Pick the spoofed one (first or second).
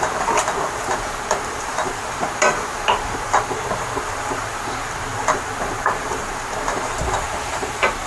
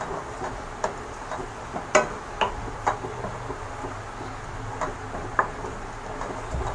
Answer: first